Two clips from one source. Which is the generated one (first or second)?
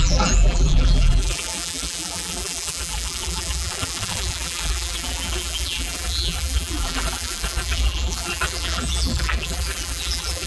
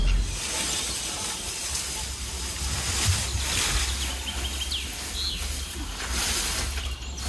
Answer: first